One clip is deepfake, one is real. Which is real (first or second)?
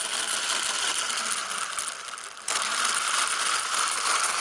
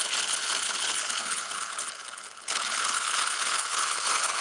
first